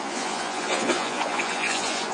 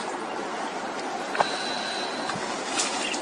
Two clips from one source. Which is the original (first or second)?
second